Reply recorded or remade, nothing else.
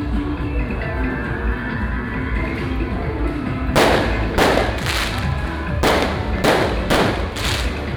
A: recorded